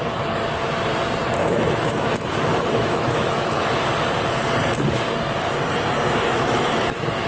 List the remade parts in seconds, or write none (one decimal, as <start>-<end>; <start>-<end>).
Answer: 1.4-3.7; 6.2-7.3

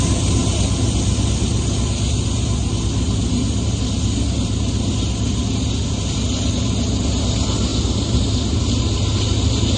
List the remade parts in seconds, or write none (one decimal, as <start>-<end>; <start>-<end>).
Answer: none

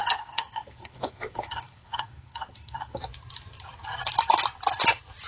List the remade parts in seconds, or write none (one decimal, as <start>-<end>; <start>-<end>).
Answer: 0.0-3.0

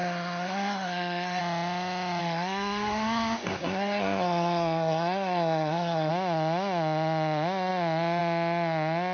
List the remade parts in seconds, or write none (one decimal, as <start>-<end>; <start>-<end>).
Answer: 0.0-1.4; 2.2-6.1